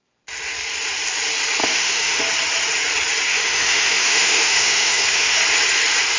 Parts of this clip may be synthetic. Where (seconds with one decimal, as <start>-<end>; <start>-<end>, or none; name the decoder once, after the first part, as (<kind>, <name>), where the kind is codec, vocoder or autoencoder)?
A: 1.6-2.2 (autoencoder, DAC-VAE); 3.3-5.4

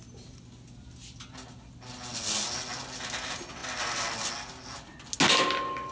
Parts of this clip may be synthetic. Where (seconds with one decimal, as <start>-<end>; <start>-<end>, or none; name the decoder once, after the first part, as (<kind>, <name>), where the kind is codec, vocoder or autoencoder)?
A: none

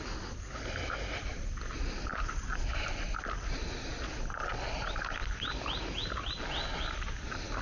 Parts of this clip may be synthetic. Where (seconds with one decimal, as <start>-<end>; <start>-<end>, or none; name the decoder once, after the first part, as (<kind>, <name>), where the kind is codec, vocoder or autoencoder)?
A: 2.1-2.8 (vocoder, BigVGAN v2)

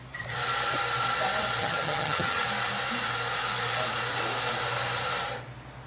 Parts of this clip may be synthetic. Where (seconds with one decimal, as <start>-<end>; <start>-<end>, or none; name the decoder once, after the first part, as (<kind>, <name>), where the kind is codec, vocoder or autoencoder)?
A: 1.6-2.4 (vocoder, HiFi-GAN)